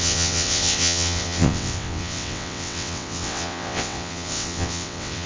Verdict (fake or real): fake